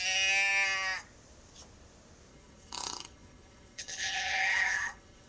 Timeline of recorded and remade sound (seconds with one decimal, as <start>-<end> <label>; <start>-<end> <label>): 0.0-2.3 recorded; 2.3-5.3 remade